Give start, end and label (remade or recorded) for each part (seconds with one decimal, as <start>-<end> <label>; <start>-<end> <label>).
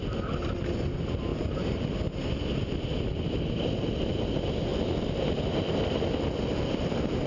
0.0-1.3 recorded; 1.3-1.9 remade; 1.9-7.3 recorded